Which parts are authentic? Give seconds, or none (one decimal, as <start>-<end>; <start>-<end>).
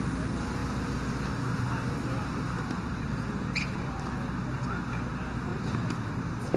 0.0-6.6